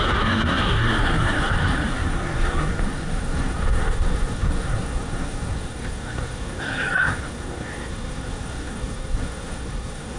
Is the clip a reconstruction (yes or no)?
yes